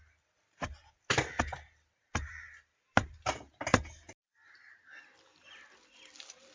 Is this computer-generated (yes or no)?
no